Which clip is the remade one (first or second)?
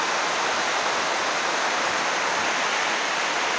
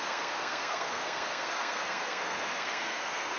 second